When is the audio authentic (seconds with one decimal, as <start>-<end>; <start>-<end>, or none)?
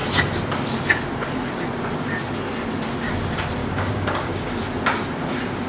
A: 0.0-3.6; 4.6-5.7